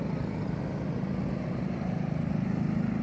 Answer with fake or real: real